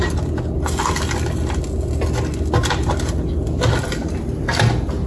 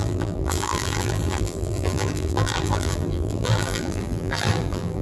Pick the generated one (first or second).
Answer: second